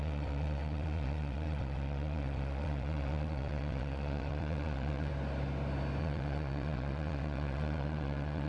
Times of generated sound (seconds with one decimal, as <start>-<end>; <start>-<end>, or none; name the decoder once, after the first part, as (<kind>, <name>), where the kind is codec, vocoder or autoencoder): 0.0-5.1 (vocoder, WaveNeXt); 6.0-8.5